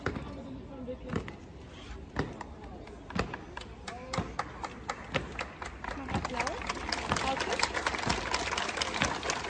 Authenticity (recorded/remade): recorded